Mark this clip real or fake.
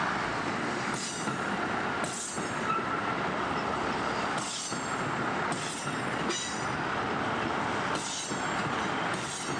real